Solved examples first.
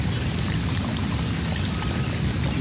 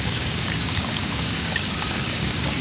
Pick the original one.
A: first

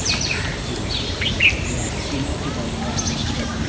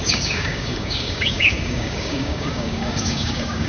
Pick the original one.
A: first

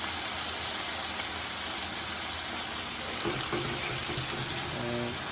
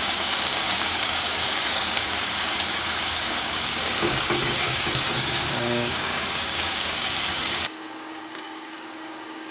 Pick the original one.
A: first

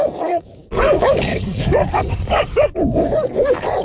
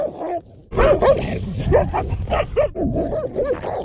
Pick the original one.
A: second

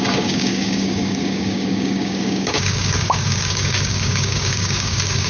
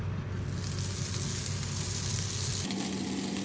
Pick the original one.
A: second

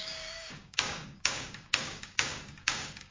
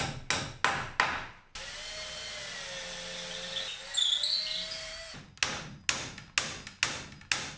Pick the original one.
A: second